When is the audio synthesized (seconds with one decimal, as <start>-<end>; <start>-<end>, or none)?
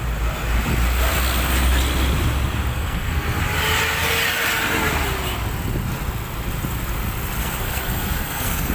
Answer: 2.7-3.4; 7.4-8.7